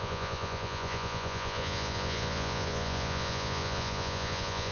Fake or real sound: fake